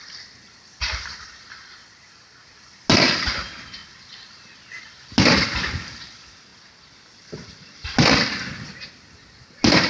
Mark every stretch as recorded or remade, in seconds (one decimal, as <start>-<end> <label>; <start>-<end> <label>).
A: 0.0-9.9 recorded